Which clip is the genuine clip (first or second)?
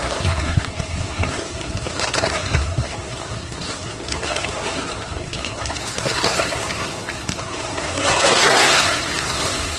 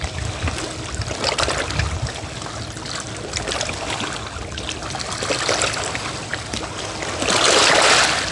second